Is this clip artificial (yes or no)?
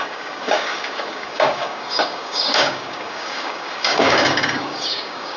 yes